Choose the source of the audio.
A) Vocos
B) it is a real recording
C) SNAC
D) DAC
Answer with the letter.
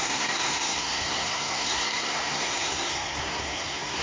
C